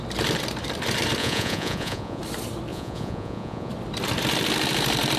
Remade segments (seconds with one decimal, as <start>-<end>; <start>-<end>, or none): 1.2-2.2; 2.7-3.7